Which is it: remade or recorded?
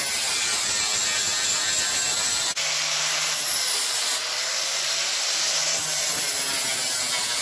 recorded